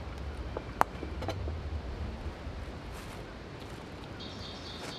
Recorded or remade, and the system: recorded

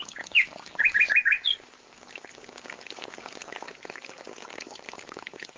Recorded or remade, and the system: remade, codec, DAC